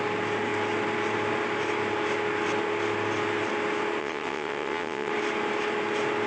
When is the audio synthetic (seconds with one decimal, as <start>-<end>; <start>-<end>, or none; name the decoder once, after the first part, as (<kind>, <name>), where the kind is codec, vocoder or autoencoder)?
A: 4.0-5.1 (vocoder, WaveNeXt)